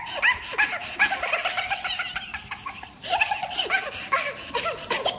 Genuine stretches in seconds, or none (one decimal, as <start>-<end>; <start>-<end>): 0.0-5.2